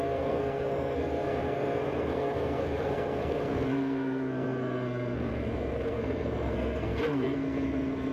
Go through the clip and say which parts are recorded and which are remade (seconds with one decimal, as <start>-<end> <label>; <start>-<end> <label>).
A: 0.0-8.1 remade